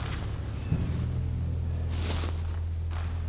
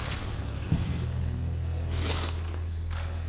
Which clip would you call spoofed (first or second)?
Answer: second